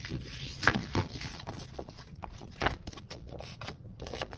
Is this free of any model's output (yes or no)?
no